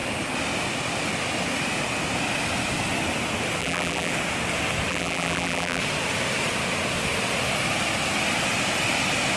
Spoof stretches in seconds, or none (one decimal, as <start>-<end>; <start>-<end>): 3.6-4.1; 4.9-5.8